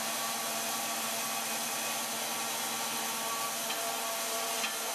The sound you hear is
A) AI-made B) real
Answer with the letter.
B